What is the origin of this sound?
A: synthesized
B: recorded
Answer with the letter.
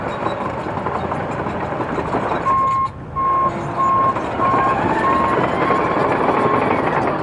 B